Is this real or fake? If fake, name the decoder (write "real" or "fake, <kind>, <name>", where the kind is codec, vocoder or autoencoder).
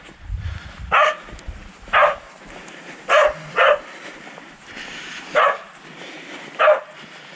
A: real